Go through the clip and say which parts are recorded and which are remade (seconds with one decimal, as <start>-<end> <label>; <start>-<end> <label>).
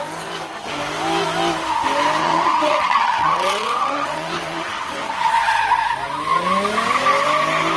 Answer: 0.0-2.2 recorded; 2.2-5.3 remade; 5.3-7.8 recorded